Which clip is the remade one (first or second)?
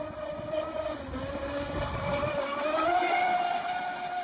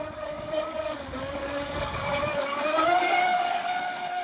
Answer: second